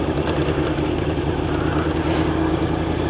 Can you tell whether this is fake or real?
real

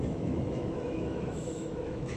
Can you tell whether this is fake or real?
fake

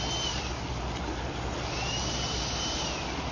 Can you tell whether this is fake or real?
real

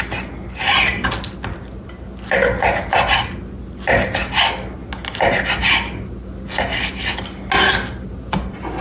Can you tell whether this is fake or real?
real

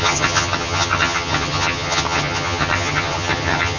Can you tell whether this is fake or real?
fake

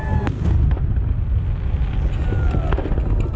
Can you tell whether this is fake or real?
real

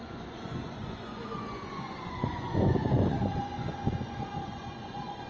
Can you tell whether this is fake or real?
fake